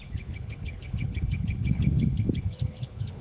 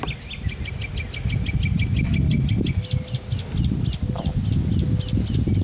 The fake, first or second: first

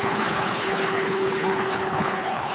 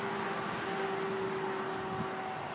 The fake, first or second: first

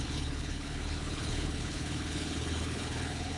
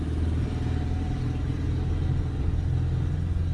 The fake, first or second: first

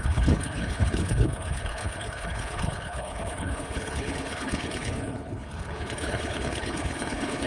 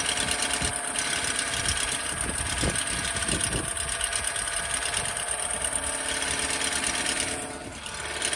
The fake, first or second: first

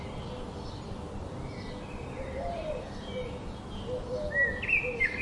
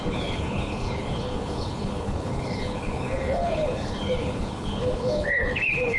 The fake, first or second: second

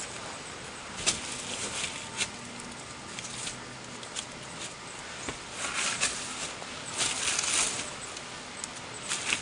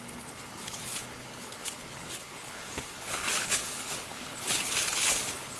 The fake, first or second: second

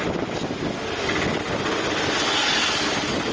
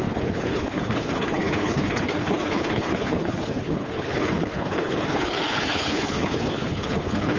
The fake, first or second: second